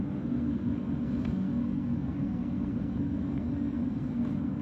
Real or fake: fake